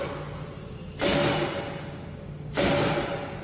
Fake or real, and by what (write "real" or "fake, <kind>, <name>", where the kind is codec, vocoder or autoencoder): real